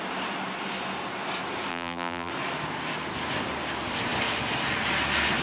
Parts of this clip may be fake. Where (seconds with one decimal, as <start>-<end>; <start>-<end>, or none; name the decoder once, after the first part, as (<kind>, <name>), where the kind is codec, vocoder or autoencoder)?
1.7-2.3 (vocoder, BigVGAN v2)